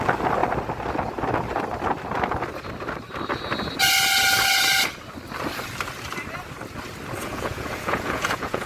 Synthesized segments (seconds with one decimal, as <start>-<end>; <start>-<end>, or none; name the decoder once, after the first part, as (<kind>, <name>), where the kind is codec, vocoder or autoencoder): 7.2-8.7 (vocoder, Vocos)